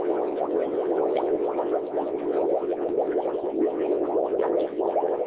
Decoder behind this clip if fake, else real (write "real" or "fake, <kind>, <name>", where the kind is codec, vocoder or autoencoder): fake, vocoder, WaveNeXt